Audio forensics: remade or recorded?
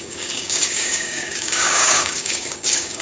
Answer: remade